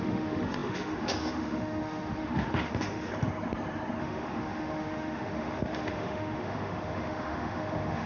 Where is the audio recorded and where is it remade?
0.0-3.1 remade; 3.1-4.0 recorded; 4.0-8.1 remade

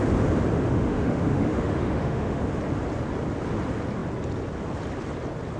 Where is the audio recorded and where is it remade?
0.0-0.6 recorded; 0.6-2.4 remade; 2.4-5.6 recorded